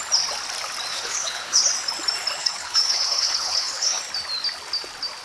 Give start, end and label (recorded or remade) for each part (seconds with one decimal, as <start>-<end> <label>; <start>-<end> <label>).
0.0-0.9 recorded; 0.9-1.6 remade; 1.6-2.4 recorded; 2.4-4.0 remade; 4.0-5.2 recorded

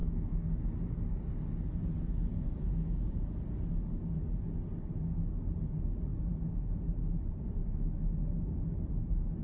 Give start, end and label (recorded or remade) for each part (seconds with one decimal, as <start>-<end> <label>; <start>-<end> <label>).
0.0-1.4 recorded; 1.4-4.2 remade; 4.2-5.3 recorded; 5.3-9.4 remade

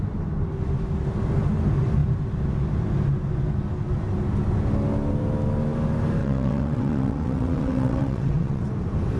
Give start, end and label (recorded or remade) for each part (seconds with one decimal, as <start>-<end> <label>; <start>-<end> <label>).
0.0-6.2 recorded; 6.2-8.6 remade; 8.6-9.2 recorded

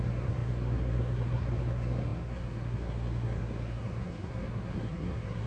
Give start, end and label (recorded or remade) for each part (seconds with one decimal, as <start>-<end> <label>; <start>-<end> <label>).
0.0-5.5 remade

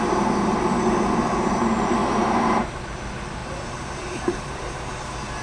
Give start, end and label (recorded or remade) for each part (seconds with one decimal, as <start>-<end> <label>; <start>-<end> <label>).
0.0-2.0 recorded; 2.0-2.8 remade; 2.8-3.4 recorded; 3.4-4.9 remade; 4.9-5.4 recorded

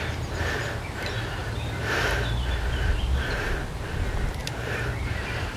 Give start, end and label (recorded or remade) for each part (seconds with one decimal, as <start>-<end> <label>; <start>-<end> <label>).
0.0-1.4 recorded; 1.4-3.5 remade; 3.5-4.4 recorded; 4.4-5.6 remade

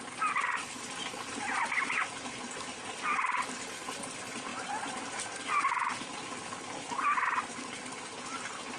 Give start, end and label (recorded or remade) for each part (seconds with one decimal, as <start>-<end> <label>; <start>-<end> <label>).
0.0-4.5 recorded; 4.5-7.8 remade; 7.8-8.8 recorded